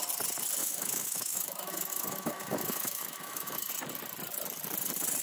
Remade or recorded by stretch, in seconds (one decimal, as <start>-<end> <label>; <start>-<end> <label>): 0.0-0.6 recorded; 0.6-3.7 remade; 3.7-5.2 recorded